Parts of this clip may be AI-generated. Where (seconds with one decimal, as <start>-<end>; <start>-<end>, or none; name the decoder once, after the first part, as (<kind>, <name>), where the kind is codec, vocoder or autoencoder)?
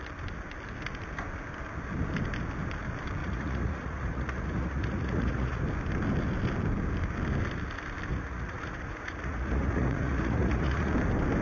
3.2-5.6 (vocoder, Vocos); 8.1-10.9